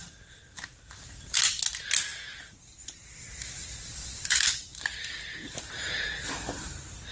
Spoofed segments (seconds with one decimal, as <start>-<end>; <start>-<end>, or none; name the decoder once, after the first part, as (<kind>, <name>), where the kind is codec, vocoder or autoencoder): 2.1-6.0 (vocoder, BigVGAN v2)

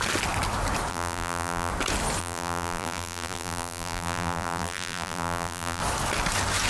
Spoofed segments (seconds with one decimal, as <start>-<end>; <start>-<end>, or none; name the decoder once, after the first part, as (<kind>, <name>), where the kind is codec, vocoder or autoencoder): 0.9-1.7 (vocoder, BigVGAN v2); 2.2-5.8

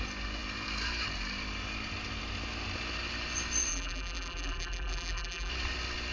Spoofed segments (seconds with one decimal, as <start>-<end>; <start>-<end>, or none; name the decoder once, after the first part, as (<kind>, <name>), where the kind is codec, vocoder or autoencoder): 3.7-5.5 (vocoder, BigVGAN v2)

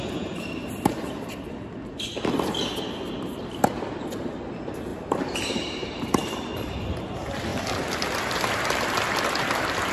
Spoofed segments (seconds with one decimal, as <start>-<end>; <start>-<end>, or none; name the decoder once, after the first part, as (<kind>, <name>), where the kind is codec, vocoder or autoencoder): 4.9-6.5 (vocoder, BigVGAN v2)

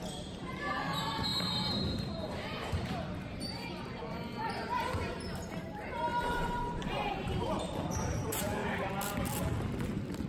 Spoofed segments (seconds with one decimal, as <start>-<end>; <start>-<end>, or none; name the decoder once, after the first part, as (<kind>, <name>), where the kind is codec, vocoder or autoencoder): 0.0-8.6 (vocoder, BigVGAN v2)

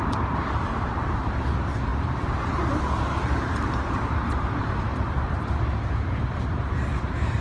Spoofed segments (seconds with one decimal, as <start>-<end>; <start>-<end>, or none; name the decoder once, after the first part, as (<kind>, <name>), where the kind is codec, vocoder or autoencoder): 0.0-7.4 (vocoder, BigVGAN v2)

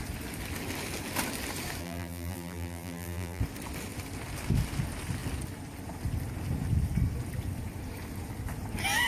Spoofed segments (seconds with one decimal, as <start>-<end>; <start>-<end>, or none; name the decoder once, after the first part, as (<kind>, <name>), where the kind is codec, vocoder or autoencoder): 1.8-3.4 (vocoder, BigVGAN v2)